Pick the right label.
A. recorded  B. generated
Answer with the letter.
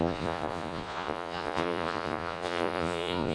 B